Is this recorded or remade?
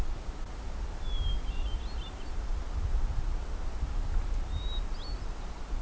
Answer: recorded